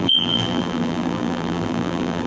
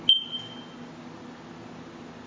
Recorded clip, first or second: second